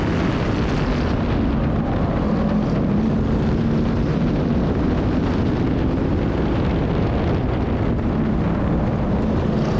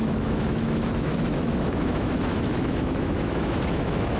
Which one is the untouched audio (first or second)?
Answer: first